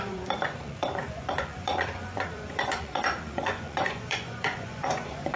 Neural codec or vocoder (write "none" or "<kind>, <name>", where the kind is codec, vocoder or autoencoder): vocoder, Vocos